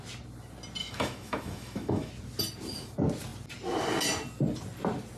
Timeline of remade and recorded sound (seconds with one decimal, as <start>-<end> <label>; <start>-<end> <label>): 0.0-0.8 recorded; 0.8-2.1 remade; 2.1-5.2 recorded